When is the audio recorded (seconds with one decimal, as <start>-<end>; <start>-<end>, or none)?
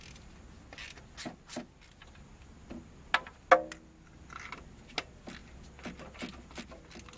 0.0-7.2